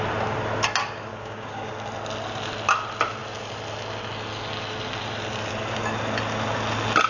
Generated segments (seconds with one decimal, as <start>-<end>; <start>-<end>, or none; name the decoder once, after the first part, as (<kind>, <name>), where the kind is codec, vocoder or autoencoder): 1.1-1.7 (codec, DAC)